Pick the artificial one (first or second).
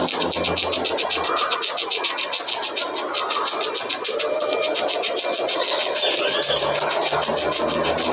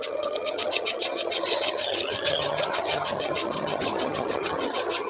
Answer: second